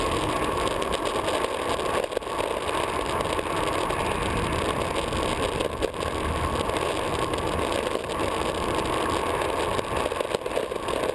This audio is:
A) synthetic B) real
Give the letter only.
B